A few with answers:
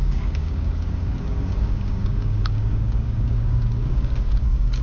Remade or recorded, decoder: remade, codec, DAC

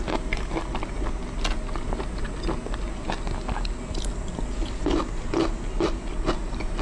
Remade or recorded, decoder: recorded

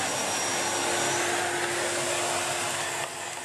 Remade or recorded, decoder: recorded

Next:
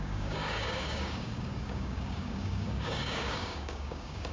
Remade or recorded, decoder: remade, codec, DAC